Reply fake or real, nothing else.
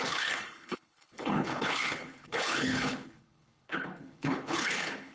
fake